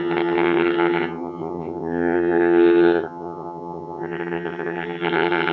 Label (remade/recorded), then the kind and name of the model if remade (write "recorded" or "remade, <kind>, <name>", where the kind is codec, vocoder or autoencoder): remade, vocoder, HiFi-GAN